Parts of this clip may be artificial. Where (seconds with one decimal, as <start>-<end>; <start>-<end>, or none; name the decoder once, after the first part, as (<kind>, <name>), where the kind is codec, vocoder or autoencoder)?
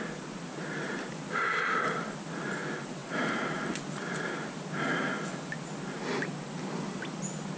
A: none